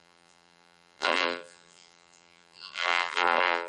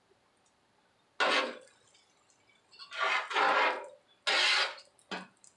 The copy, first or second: first